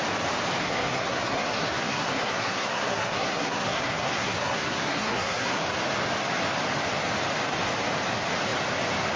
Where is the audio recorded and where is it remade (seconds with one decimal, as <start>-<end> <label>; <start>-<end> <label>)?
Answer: 0.0-0.6 recorded; 0.6-5.6 remade; 5.6-9.2 recorded